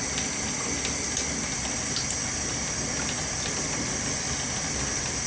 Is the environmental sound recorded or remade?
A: recorded